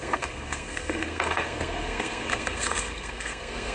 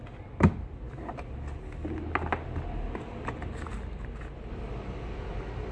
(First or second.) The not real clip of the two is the first